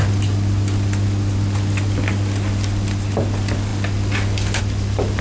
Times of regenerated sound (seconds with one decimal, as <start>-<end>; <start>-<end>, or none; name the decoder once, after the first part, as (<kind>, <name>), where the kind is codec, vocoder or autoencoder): none